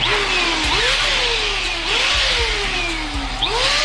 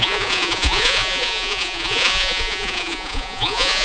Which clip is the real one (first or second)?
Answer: first